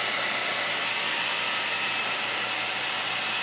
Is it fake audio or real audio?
real